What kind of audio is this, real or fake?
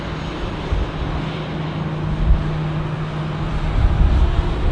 real